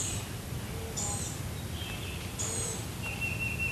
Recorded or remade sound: recorded